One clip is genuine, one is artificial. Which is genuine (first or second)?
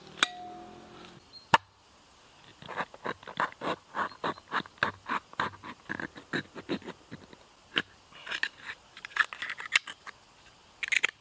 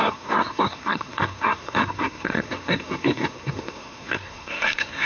first